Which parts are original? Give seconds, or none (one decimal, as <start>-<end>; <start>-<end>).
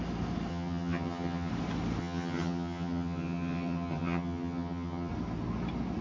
0.0-0.5; 1.5-2.0; 5.1-6.0